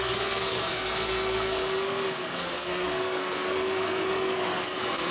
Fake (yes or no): yes